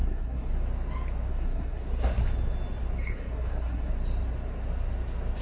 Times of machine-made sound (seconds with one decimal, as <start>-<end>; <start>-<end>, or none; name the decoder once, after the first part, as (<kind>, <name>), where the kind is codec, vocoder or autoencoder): 0.0-0.5 (codec, SNAC); 1.3-2.2; 3.0-3.9